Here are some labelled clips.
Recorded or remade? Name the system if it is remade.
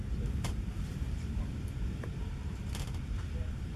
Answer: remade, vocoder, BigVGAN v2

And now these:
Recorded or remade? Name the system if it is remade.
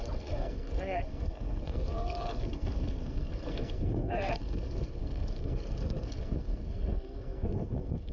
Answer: remade, codec, SNAC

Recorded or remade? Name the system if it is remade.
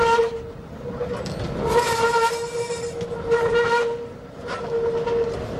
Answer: recorded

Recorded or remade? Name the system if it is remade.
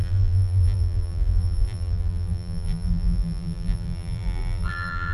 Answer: remade, vocoder, BigVGAN v2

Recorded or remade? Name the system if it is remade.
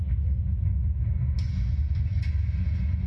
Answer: recorded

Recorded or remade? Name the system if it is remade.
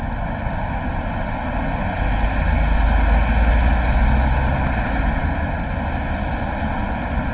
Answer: recorded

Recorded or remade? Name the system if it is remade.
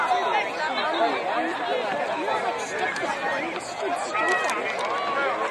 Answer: recorded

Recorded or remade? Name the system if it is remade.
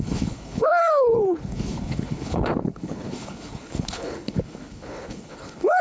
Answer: remade, codec, HILCodec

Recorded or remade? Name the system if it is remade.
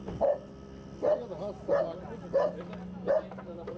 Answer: recorded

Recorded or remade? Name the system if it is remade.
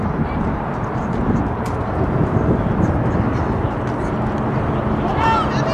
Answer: recorded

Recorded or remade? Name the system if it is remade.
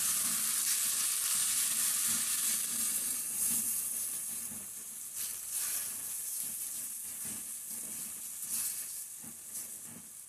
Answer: recorded